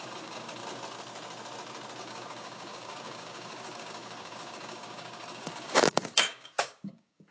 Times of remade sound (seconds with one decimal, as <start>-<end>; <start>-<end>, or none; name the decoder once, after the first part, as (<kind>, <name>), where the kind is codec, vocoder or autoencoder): 0.0-0.6 (codec, DAC); 2.0-7.3